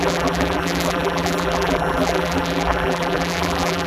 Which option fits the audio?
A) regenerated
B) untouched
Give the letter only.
A